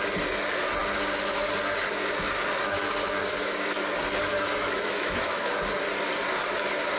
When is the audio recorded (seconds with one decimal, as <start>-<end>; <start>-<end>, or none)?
0.0-4.3; 5.5-7.0